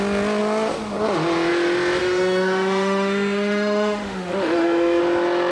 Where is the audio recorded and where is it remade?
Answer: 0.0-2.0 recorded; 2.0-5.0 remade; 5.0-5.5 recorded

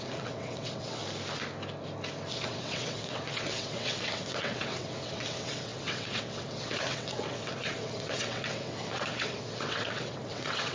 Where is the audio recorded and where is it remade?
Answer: 0.0-1.0 remade; 1.0-2.3 recorded; 2.3-10.7 remade

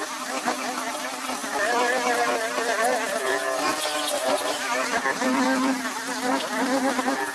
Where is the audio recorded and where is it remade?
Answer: 0.0-7.3 recorded

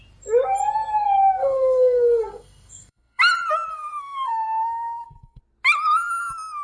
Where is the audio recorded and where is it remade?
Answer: 0.0-1.4 recorded; 1.4-3.2 remade; 3.2-3.7 recorded; 3.7-5.4 remade; 5.4-6.6 recorded